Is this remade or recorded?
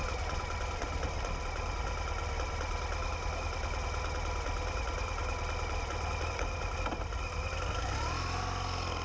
recorded